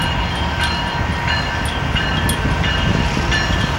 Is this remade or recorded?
recorded